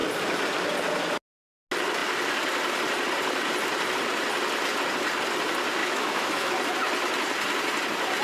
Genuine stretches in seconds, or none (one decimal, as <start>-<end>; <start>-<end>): 0.0-5.8; 6.6-8.2